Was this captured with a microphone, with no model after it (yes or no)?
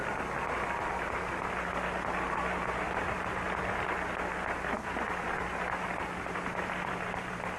yes